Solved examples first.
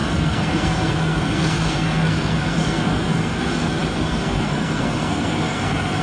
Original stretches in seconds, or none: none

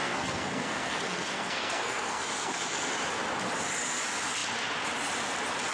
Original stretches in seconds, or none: 2.9-5.7

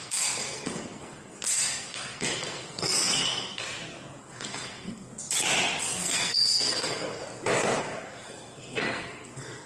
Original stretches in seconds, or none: 3.6-4.2; 5.1-5.8; 7.2-7.8

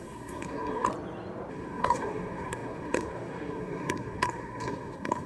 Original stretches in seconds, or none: 0.9-1.5

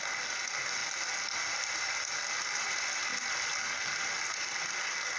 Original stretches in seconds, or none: 0.0-5.2

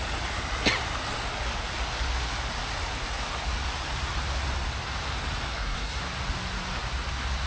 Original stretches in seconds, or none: 0.0-5.5; 6.0-7.5